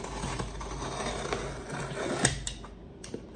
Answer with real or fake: real